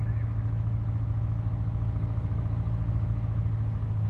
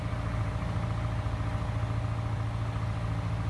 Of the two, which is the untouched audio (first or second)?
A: second